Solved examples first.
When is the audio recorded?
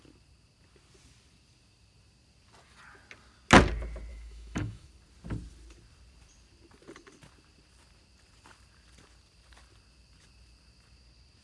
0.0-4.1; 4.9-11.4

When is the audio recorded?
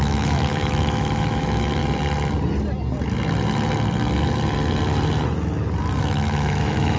1.8-6.0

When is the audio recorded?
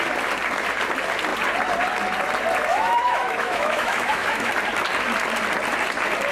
0.0-2.7; 4.5-6.3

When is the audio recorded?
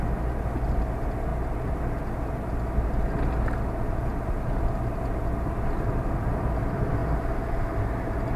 0.0-8.4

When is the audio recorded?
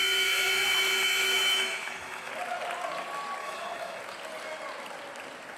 2.3-3.4; 4.0-5.6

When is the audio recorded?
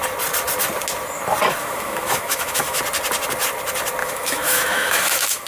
0.0-1.6; 2.8-4.0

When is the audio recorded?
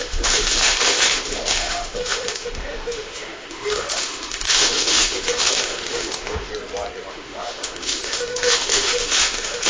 6.5-7.1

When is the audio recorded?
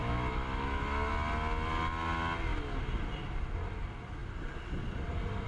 1.1-5.5